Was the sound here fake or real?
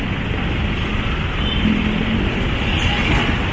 real